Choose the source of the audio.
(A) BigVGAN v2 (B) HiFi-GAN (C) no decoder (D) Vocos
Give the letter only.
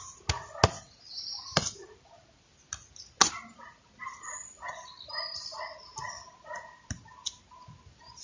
C